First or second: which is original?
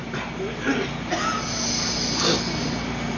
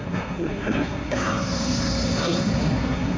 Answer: first